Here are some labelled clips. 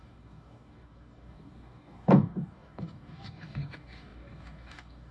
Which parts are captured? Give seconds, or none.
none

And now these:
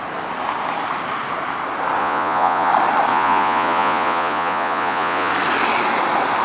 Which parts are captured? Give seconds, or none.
0.0-2.0; 2.7-3.1; 5.3-6.4